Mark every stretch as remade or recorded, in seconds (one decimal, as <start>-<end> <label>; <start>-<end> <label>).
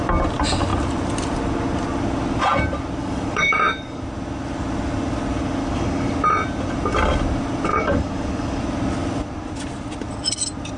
0.0-3.0 recorded; 3.0-4.0 remade; 4.0-5.6 recorded; 5.6-6.1 remade; 6.1-7.7 recorded; 7.7-8.6 remade; 8.6-10.8 recorded